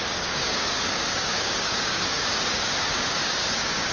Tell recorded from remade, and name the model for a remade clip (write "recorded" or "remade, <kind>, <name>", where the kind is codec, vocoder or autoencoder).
remade, codec, DAC